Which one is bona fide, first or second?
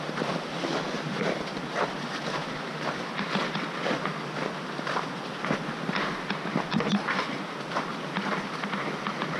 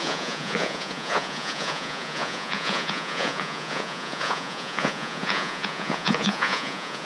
first